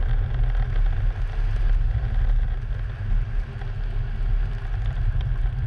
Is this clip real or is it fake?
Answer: real